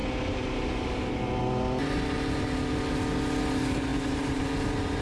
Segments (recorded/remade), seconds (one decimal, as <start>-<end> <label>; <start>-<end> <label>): 0.0-1.8 recorded; 1.8-2.4 remade; 2.4-3.9 recorded; 3.9-4.4 remade; 4.4-5.0 recorded